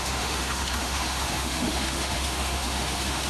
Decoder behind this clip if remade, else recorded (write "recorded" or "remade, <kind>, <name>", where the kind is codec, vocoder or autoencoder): remade, autoencoder, DAC-VAE